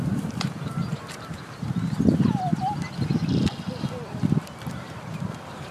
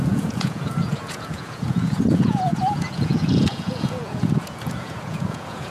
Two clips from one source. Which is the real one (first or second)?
first